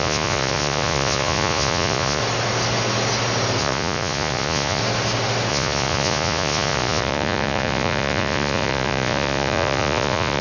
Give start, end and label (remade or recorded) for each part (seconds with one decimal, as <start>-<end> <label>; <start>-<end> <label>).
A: 0.0-2.2 remade; 2.2-3.6 recorded; 3.6-4.8 remade; 4.8-5.5 recorded; 5.5-10.4 remade